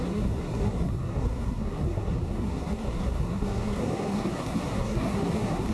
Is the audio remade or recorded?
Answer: remade